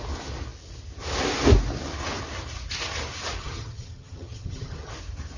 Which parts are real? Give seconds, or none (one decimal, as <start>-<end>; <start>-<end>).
0.0-3.4; 4.9-5.4